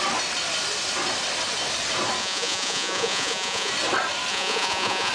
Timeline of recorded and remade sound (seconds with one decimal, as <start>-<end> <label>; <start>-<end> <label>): 0.0-2.2 recorded; 2.2-3.7 remade; 3.7-4.3 recorded; 4.3-5.1 remade